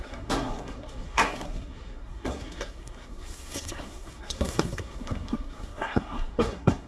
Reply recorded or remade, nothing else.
remade